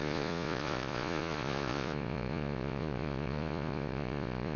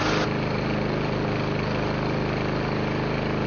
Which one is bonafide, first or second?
second